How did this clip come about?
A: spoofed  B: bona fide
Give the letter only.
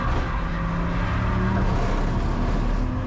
B